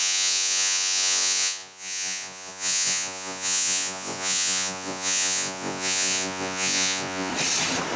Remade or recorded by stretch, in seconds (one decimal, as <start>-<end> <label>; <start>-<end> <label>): 0.0-7.3 remade; 7.3-8.0 recorded